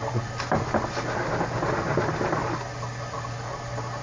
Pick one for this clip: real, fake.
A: real